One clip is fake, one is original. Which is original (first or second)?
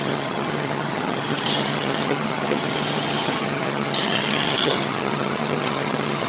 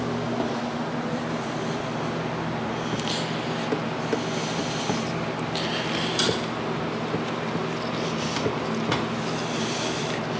second